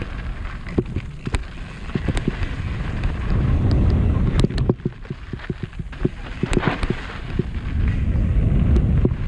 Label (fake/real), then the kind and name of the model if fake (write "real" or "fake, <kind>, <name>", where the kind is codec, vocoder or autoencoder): real